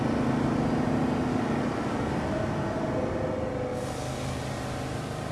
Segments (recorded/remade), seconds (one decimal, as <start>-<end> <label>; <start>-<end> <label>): 0.0-1.3 recorded; 1.3-2.1 remade; 2.1-3.7 recorded; 3.7-4.4 remade; 4.4-5.3 recorded